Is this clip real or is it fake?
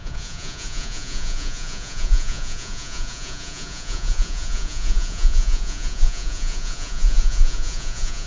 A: fake